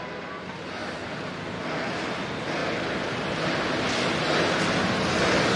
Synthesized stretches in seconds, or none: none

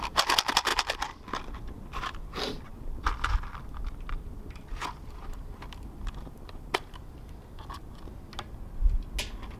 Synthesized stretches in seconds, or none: 2.7-7.0 (vocoder, BigVGAN v2)

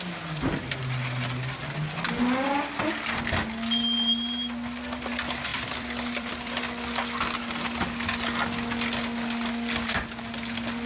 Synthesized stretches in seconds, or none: 5.5-6.6 (vocoder, BigVGAN v2)

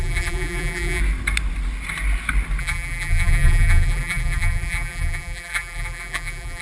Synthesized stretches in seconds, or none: 0.0-1.0 (vocoder, BigVGAN v2); 2.6-6.6

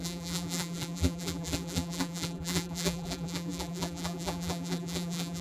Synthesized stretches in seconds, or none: 0.0-5.4 (vocoder, BigVGAN v2)

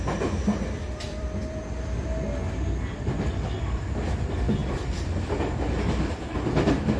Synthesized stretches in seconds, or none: 1.1-1.6 (vocoder, BigVGAN v2)

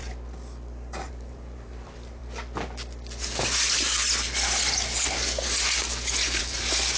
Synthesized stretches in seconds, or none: 1.1-2.2 (vocoder, BigVGAN v2); 6.4-7.0